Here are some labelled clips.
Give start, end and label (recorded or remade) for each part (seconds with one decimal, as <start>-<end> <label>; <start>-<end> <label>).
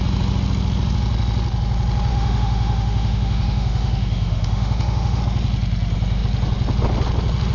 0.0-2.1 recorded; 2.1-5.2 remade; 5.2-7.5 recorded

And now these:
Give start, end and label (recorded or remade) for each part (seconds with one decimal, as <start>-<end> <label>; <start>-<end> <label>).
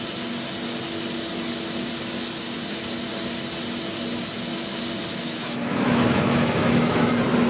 0.0-5.1 recorded; 5.1-7.1 remade; 7.1-7.5 recorded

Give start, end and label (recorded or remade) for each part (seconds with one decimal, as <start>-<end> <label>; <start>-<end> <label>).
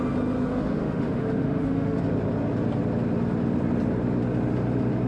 0.0-0.5 recorded; 0.5-2.0 remade; 2.0-5.1 recorded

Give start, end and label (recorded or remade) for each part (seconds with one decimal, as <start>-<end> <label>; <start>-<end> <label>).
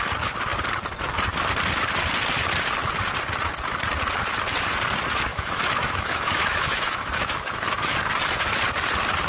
0.0-5.3 recorded; 5.3-8.0 remade; 8.0-9.3 recorded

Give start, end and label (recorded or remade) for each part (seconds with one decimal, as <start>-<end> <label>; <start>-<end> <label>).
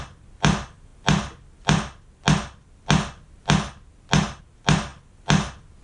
0.0-5.8 recorded